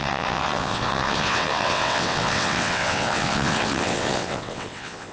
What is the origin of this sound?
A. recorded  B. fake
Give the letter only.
B